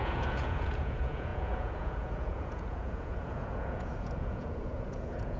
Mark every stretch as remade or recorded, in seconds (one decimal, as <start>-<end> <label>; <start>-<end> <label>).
0.0-5.4 remade